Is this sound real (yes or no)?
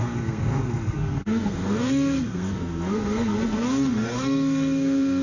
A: no